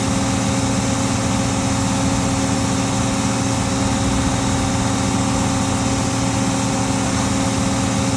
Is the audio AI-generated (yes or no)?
no